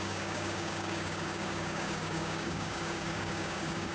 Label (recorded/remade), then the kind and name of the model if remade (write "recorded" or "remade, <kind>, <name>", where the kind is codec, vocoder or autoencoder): remade, codec, DAC